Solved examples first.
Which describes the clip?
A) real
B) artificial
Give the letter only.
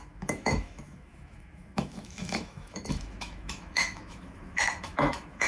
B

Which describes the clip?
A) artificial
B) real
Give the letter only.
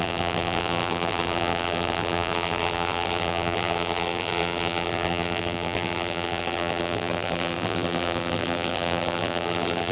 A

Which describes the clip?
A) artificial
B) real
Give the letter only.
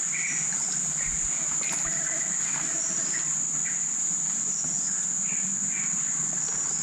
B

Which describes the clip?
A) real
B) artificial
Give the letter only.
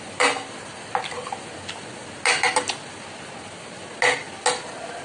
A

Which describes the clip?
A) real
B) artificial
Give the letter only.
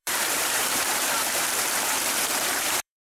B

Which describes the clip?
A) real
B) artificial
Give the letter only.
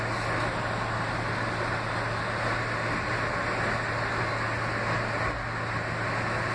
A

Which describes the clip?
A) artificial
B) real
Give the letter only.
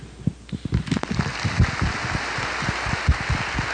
B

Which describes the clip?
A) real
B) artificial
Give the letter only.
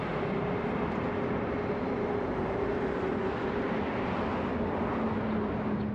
A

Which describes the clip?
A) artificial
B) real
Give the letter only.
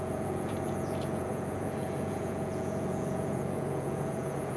A